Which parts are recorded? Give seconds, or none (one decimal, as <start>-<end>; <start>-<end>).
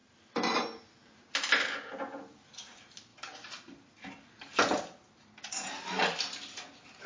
0.0-7.1